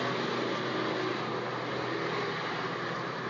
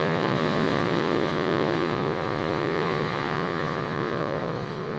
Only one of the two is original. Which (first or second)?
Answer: first